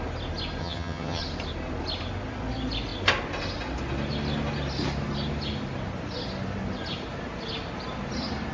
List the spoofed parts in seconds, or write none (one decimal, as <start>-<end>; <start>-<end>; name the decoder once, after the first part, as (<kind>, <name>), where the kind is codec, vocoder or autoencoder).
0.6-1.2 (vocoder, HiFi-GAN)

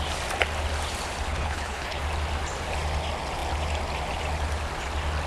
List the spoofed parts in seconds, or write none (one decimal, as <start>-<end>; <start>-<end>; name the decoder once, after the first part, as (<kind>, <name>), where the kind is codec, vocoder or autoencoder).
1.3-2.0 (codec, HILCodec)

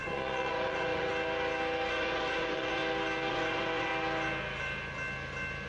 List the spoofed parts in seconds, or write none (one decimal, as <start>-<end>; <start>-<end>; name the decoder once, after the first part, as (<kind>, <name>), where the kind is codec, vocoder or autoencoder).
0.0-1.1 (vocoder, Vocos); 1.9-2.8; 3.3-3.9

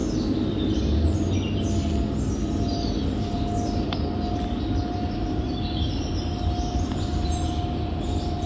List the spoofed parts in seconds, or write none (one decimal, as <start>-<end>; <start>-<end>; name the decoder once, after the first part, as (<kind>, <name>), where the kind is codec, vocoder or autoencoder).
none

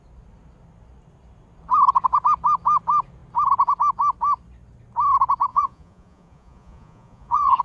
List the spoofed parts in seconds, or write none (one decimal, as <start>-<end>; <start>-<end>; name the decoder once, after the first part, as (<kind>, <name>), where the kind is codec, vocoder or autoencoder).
5.5-7.6 (vocoder, Vocos)

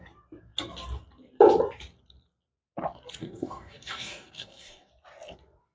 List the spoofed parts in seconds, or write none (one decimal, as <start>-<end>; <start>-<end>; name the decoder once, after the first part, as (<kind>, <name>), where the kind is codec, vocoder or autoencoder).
3.2-4.9 (codec, DAC)